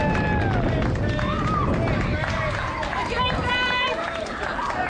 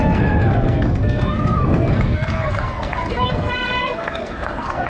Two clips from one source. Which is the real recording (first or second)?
first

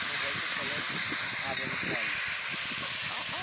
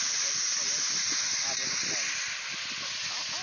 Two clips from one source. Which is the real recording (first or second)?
second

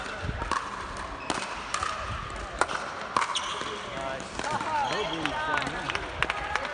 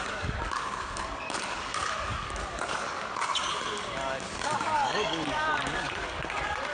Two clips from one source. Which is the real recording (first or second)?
first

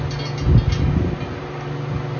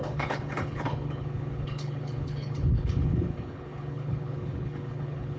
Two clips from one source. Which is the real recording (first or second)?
first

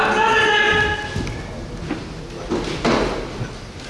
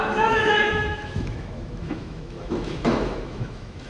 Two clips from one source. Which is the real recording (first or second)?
first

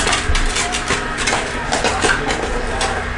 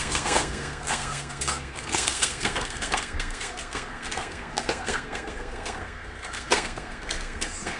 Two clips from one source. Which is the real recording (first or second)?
first